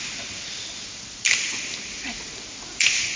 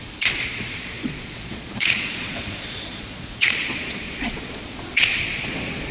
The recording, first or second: first